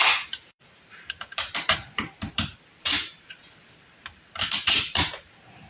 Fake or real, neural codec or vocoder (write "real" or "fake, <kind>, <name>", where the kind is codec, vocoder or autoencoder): fake, vocoder, BigVGAN v2